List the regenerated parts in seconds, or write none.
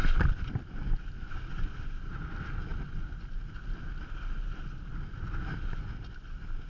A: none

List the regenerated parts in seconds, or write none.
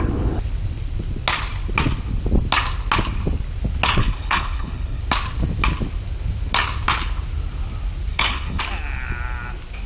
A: 4.0-5.0 (codec, HILCodec); 8.1-8.6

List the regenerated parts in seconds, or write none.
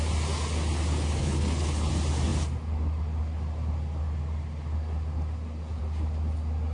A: 1.2-1.9 (codec, HILCodec)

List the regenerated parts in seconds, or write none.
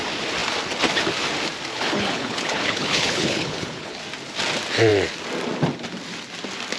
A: 1.7-4.0 (codec, HILCodec)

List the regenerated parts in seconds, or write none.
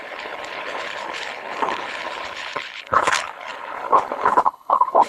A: 0.0-5.1 (codec, HILCodec)